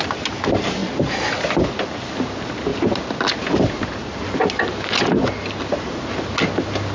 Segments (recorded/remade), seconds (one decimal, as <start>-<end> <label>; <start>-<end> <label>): 0.0-6.9 recorded